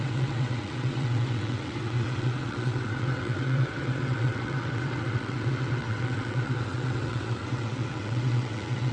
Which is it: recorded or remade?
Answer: remade